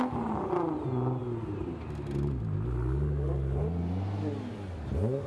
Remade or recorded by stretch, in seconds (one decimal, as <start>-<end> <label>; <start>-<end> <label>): 0.0-5.3 recorded